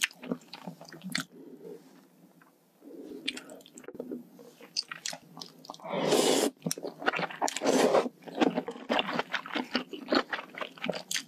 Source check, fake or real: real